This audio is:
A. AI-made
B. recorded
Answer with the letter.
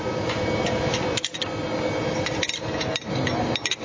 B